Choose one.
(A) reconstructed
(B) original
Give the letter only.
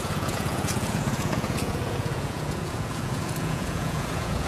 A